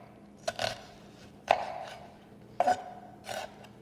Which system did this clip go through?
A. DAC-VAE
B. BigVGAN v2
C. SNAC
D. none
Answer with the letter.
D